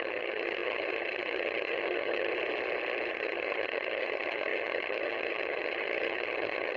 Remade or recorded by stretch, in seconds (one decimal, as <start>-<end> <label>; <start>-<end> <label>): 0.0-2.3 remade; 2.3-3.1 recorded; 3.1-6.8 remade